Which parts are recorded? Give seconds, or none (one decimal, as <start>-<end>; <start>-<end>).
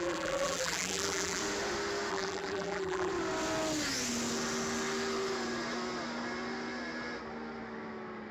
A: 1.4-2.1; 3.1-8.3